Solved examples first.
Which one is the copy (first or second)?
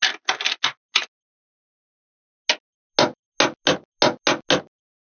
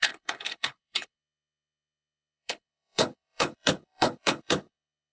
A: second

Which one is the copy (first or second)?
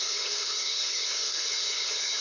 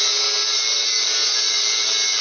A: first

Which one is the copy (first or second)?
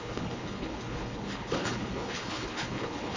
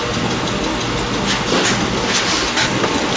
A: first